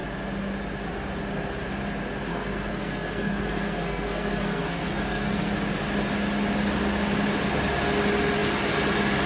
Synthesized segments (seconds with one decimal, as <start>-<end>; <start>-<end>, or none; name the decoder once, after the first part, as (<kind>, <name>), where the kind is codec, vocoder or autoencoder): 2.3-5.5 (codec, SNAC)